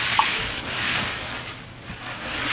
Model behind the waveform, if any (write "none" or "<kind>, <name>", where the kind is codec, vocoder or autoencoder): codec, DAC